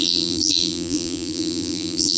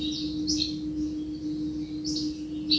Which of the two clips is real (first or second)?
second